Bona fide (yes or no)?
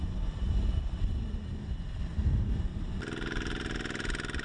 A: yes